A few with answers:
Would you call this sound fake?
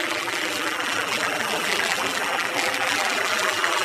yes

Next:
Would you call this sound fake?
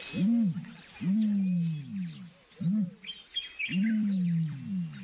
no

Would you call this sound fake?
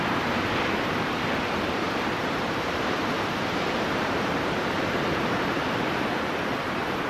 yes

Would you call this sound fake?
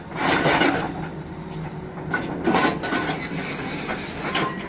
no